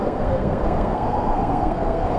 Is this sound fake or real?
fake